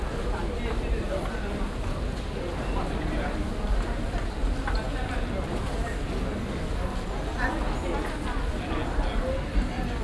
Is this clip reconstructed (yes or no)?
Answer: no